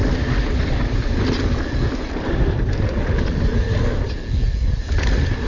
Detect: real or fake real